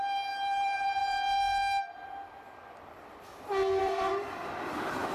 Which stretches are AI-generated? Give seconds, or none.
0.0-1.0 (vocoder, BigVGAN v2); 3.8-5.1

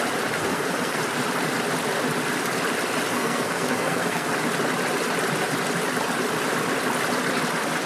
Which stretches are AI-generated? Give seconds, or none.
0.4-1.0 (codec, SNAC); 3.1-4.3

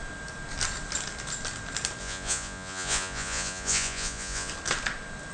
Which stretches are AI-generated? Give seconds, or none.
2.0-4.5 (vocoder, Vocos)